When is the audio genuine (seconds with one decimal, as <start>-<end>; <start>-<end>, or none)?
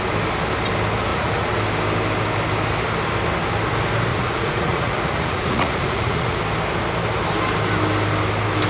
0.0-1.1; 1.6-4.1; 6.4-8.7